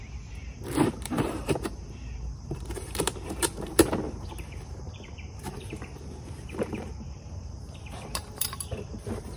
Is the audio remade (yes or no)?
yes